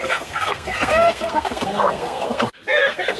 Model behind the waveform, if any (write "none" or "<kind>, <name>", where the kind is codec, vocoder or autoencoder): codec, SNAC